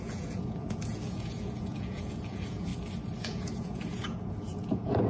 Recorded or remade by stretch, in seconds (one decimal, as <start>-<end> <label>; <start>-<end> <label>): 0.0-2.7 remade; 2.7-3.2 recorded; 3.2-5.1 remade